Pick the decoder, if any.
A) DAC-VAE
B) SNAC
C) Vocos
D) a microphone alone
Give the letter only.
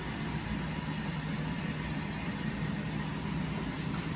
D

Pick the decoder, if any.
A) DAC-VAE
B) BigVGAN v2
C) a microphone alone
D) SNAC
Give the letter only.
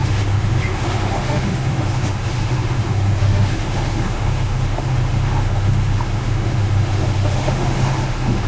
A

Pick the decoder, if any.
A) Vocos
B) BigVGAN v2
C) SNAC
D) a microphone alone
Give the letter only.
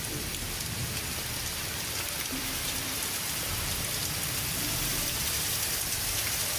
B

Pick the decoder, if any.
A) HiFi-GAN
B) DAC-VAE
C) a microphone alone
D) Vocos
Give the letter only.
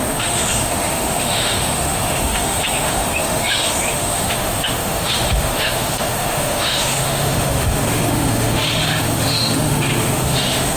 B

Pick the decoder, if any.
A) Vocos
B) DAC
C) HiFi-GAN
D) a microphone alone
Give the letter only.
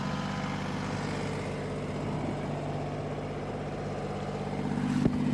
D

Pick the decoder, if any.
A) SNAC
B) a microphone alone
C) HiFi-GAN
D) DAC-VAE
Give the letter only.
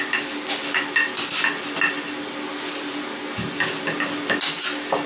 B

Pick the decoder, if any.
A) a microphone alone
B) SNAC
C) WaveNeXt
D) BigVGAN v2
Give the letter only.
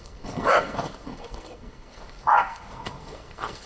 B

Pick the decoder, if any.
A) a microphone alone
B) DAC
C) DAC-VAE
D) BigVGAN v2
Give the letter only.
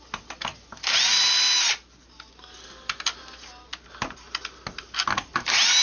A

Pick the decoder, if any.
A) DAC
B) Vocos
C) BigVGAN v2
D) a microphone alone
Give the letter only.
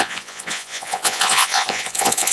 B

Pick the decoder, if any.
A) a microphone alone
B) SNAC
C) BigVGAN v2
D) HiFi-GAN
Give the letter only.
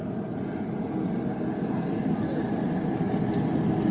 A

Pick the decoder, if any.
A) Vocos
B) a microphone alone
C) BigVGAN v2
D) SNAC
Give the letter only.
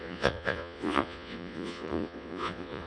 A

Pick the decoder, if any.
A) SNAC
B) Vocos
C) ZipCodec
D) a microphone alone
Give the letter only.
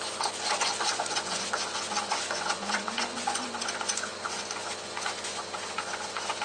B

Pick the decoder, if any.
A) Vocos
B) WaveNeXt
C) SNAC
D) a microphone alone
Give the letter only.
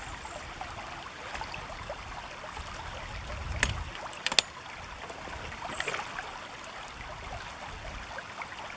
D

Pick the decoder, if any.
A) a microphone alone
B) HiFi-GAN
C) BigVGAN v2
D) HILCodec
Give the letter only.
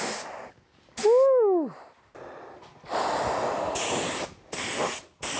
A